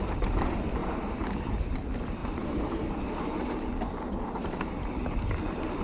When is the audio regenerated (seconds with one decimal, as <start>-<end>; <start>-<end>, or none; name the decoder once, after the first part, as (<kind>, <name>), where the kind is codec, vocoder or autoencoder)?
0.8-1.6 (vocoder, BigVGAN v2); 2.2-2.9; 4.4-5.0